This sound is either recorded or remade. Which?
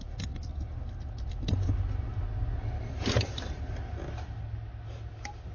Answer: recorded